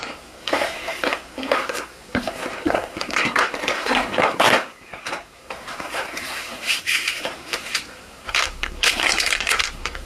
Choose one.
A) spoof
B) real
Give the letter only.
A